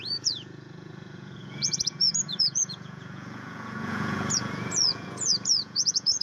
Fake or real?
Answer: fake